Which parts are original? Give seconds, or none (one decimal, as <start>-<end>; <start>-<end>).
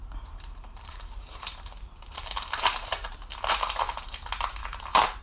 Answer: 3.1-4.6